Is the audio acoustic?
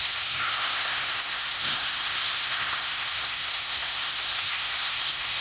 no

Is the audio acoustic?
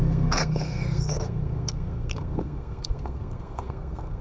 no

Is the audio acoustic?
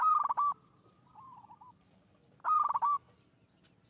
yes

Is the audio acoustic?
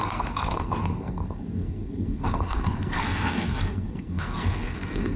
no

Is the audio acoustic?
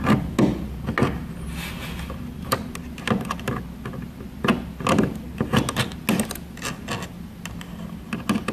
yes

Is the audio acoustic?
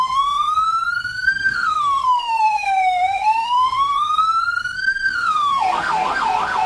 no